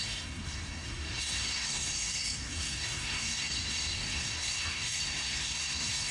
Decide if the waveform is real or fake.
fake